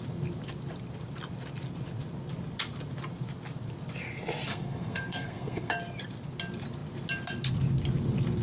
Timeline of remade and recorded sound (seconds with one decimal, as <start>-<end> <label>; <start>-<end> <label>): 0.0-4.5 recorded; 4.5-5.7 remade; 5.7-8.4 recorded